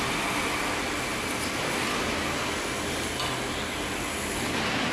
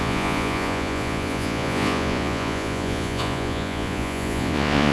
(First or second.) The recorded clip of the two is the first